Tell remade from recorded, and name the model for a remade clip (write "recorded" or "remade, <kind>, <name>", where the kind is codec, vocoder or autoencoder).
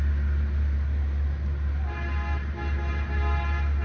recorded